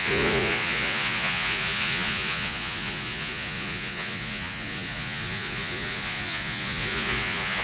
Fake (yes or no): yes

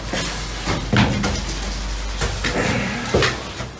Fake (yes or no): no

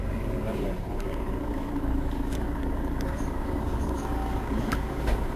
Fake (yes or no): yes